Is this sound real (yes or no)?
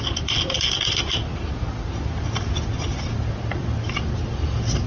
yes